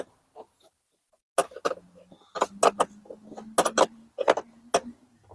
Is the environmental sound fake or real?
real